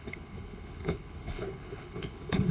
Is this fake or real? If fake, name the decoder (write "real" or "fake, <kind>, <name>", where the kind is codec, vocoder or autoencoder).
fake, codec, HILCodec